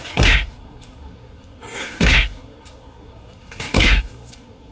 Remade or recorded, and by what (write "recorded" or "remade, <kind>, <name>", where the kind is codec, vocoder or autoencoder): remade, codec, SNAC